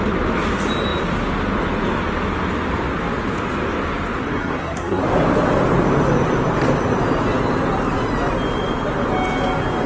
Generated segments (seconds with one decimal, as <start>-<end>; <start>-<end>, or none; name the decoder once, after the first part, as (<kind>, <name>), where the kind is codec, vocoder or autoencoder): 4.2-5.0 (codec, SNAC)